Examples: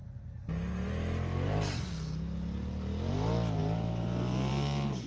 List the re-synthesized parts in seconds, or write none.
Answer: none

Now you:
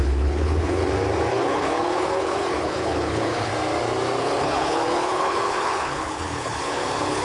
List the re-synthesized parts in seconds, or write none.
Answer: 0.0-0.8; 1.3-3.5; 4.2-7.2